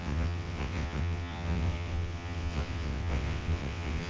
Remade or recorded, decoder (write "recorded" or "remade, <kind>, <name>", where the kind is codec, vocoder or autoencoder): remade, vocoder, WaveNeXt